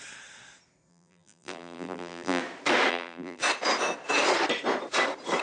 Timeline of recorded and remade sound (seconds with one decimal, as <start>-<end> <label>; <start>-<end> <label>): 0.0-0.9 recorded; 0.9-2.4 remade; 2.4-2.9 recorded; 2.9-3.4 remade; 3.4-5.4 recorded